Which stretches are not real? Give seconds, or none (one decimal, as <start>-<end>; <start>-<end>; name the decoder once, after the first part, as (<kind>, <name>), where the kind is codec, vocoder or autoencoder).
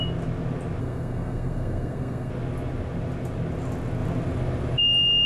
0.8-2.3 (codec, SNAC)